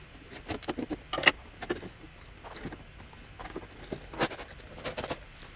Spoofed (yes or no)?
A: no